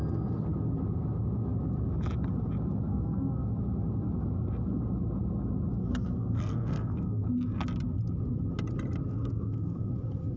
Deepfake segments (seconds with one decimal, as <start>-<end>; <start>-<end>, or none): 2.9-3.5; 5.8-7.3; 9.1-9.9